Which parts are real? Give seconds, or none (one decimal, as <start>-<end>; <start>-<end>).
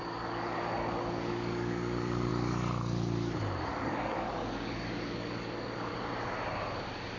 2.3-3.7; 5.9-7.2